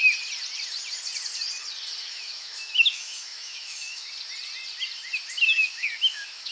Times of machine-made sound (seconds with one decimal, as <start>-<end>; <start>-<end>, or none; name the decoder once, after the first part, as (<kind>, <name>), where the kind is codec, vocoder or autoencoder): 2.0-4.1 (autoencoder, DAC-VAE); 5.5-6.5